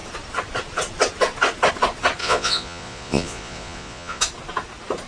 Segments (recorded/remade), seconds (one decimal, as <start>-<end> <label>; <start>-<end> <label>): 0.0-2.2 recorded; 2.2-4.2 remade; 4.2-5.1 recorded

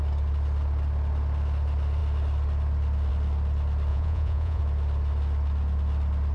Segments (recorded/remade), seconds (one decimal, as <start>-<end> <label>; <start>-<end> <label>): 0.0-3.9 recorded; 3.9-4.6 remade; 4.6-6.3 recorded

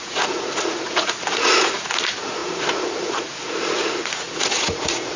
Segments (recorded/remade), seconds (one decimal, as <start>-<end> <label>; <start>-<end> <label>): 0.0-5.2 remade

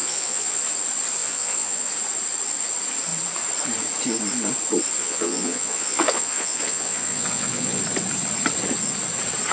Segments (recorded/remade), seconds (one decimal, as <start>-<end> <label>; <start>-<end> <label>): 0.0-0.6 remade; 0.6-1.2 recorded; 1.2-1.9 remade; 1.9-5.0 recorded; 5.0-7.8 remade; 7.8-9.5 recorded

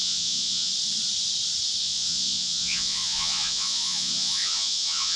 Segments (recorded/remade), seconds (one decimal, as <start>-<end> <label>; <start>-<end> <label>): 0.0-0.7 remade; 0.7-1.8 recorded; 1.8-5.2 remade